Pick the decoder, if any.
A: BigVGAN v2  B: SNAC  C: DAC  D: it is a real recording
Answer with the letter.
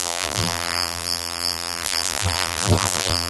A